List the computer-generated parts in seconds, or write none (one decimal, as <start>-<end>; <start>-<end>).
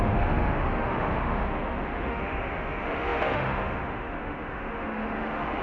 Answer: 0.0-5.6